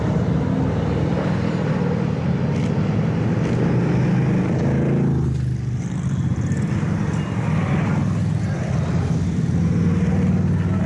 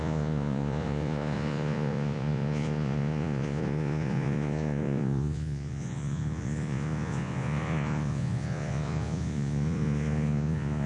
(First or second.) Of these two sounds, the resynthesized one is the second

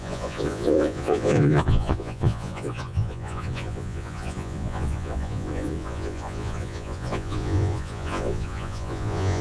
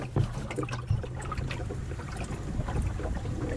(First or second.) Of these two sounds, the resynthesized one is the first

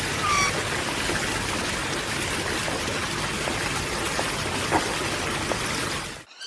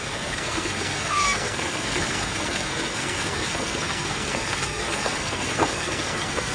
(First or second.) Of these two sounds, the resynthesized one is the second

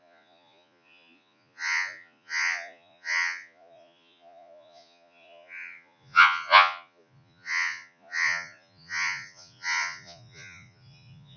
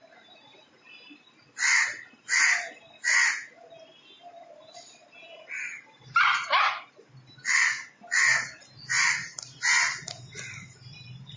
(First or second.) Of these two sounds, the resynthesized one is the first